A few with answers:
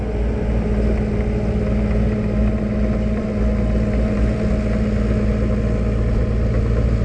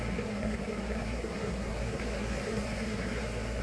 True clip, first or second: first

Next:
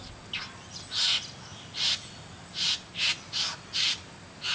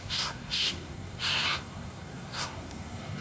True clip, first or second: first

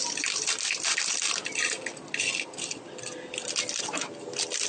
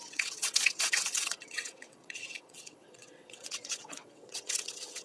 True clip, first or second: first